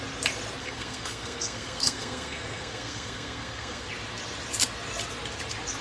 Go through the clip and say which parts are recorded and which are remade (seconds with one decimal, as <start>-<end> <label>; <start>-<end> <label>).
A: 0.0-0.6 recorded; 0.6-3.9 remade; 3.9-5.8 recorded